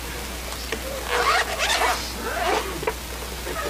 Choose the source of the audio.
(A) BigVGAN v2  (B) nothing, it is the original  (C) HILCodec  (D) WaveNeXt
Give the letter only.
B